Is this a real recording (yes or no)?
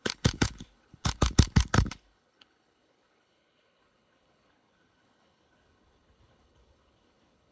no